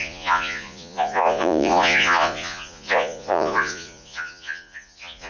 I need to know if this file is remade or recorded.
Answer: remade